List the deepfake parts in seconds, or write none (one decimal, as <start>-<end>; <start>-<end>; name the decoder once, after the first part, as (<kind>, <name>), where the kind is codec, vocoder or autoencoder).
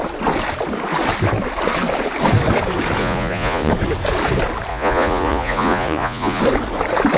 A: 3.0-3.7 (vocoder, Vocos); 4.7-6.4